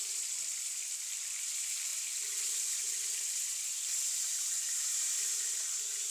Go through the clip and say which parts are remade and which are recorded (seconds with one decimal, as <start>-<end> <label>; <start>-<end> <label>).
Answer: 0.0-6.1 recorded